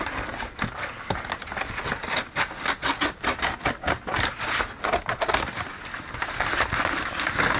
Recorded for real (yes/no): yes